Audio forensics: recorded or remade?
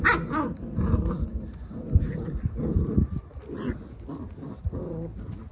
recorded